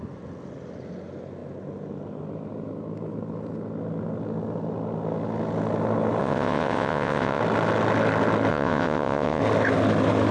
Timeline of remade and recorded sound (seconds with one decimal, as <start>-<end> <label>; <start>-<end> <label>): 0.0-6.2 recorded; 6.2-7.4 remade; 7.4-8.5 recorded; 8.5-9.4 remade; 9.4-10.3 recorded